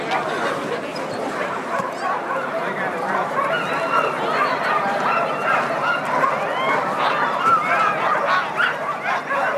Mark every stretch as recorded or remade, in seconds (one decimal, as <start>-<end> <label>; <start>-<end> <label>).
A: 0.0-0.9 recorded; 0.9-3.5 remade; 3.5-4.5 recorded; 4.5-5.7 remade; 5.7-9.6 recorded